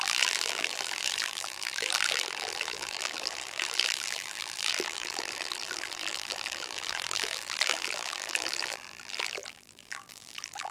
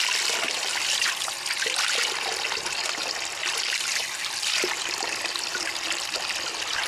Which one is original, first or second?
second